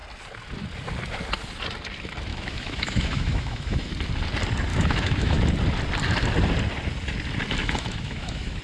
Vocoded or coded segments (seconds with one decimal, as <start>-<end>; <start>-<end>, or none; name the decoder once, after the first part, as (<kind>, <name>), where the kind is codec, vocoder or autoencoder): 2.3-3.9 (autoencoder, DAC-VAE); 4.7-5.4; 7.6-8.6